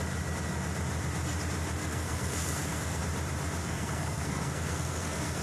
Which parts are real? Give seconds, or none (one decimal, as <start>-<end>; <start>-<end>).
0.0-1.8; 3.0-3.6